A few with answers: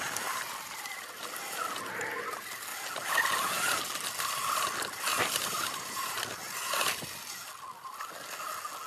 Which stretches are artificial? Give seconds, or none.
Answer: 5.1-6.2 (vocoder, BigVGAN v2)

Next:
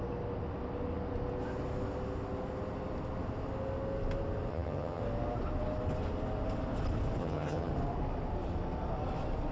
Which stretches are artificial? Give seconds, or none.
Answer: 4.5-5.0 (vocoder, HiFi-GAN); 7.2-7.7

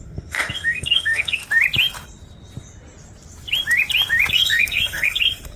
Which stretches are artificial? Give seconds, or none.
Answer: 0.0-1.4 (codec, SNAC); 4.3-5.6

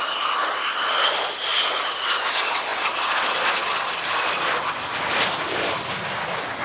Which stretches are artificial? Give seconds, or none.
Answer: none